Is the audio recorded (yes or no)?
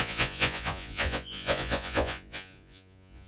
no